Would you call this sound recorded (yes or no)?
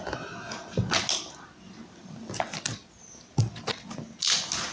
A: yes